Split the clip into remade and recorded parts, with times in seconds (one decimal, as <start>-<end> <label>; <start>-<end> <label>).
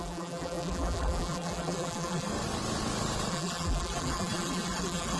0.0-2.3 remade; 2.3-3.3 recorded; 3.3-5.2 remade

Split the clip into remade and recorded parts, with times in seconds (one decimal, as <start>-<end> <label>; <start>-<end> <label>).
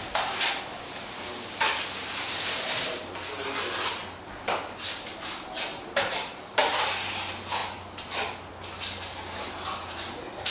0.0-5.7 recorded; 5.7-6.9 remade; 6.9-10.5 recorded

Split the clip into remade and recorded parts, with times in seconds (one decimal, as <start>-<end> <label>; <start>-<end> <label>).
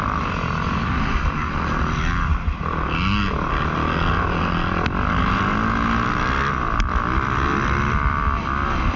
0.0-9.0 recorded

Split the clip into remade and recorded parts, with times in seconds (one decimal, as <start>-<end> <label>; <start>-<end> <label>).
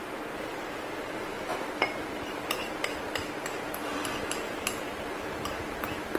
0.0-1.5 remade; 1.5-2.1 recorded; 2.1-2.6 remade; 2.6-4.2 recorded; 4.2-6.2 remade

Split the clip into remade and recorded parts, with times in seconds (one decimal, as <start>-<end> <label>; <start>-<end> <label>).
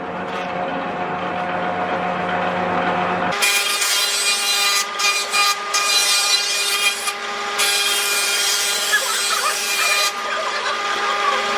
0.0-0.7 remade; 0.7-5.0 recorded; 5.0-10.7 remade; 10.7-11.6 recorded